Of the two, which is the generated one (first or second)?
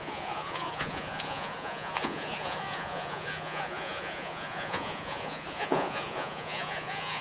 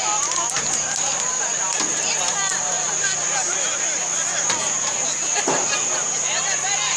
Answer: first